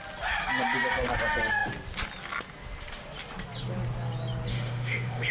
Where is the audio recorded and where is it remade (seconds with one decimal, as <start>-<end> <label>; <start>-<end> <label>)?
0.0-4.5 recorded; 4.5-5.3 remade